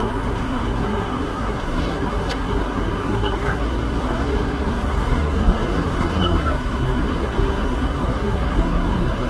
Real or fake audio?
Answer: fake